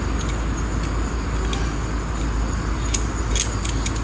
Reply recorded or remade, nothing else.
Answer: recorded